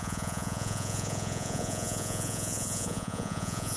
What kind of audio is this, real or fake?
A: fake